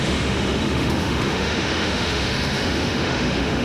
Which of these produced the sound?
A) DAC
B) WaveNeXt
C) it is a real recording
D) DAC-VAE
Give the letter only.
D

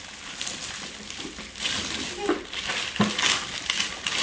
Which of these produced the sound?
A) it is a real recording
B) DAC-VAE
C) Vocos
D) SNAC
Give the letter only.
A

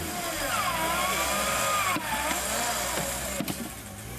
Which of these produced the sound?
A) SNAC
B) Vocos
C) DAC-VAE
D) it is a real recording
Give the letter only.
D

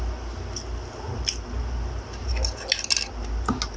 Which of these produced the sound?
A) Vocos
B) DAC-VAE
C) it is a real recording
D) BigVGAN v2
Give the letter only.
C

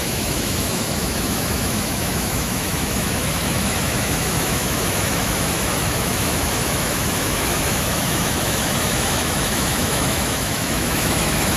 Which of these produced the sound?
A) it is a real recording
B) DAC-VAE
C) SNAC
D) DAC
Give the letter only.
B